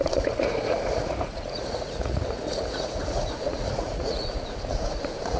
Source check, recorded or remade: remade